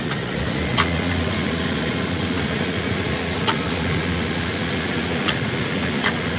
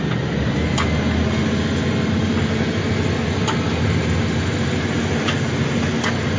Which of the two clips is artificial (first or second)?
first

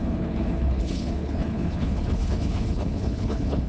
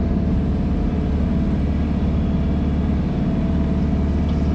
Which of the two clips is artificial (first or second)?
first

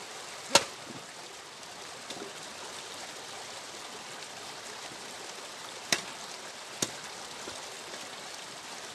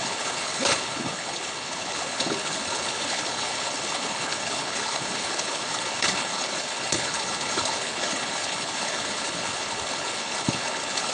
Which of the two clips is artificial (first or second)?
second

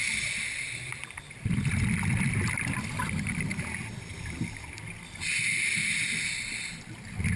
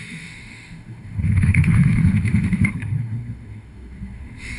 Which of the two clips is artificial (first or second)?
second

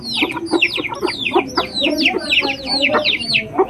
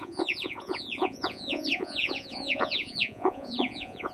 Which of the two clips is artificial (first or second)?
second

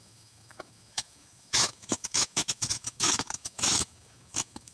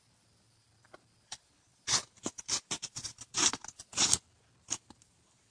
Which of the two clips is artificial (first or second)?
first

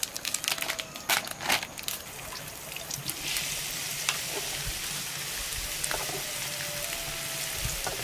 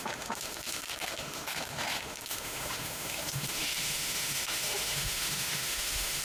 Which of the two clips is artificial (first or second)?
second